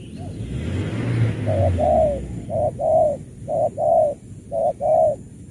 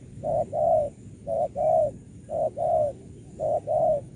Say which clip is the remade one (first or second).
second